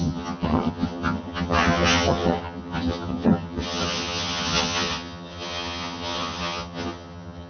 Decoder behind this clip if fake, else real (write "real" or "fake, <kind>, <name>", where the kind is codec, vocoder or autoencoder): fake, vocoder, HiFi-GAN